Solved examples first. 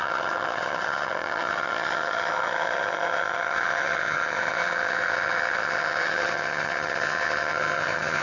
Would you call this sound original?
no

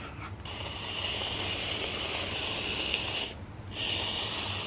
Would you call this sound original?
yes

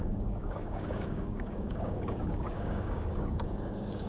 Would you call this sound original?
no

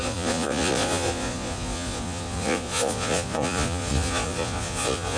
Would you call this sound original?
no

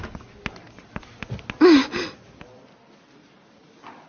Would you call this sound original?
yes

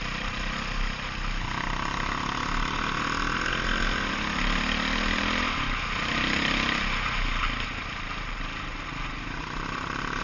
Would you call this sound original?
yes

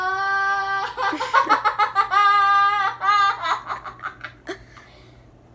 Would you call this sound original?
yes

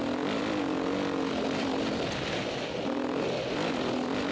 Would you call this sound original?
yes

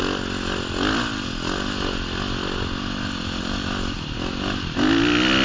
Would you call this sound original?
yes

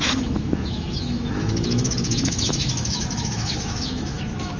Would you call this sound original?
no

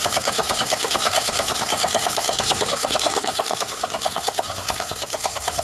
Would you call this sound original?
no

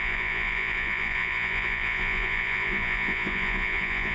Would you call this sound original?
no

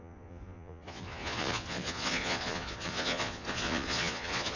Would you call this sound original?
no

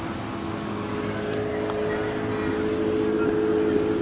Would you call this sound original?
yes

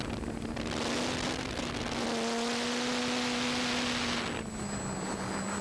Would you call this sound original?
yes